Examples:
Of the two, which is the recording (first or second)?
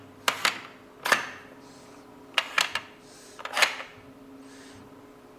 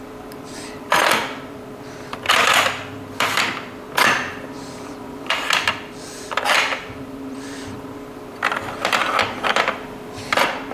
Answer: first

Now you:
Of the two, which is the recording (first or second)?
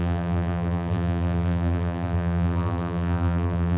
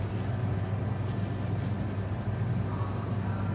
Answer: second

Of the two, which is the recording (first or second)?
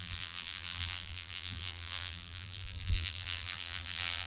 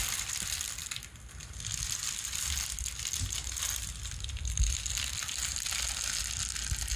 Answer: second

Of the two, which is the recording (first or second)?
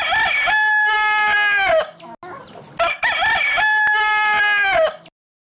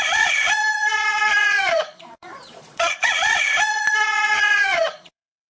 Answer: first